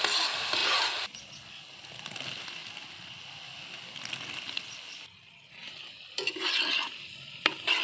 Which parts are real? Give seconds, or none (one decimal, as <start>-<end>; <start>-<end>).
0.0-7.8